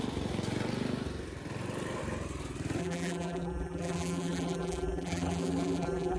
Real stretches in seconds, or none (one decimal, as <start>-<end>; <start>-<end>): 0.0-2.8